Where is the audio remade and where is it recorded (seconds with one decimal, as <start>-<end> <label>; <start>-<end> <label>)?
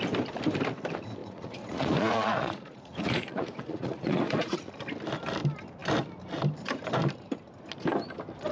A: 0.0-1.2 recorded; 1.2-4.7 remade; 4.7-8.5 recorded